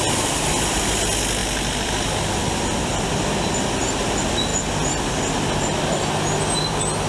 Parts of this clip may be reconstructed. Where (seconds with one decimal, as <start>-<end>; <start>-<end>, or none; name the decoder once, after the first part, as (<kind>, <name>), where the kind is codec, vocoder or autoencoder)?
1.4-1.9 (vocoder, BigVGAN v2)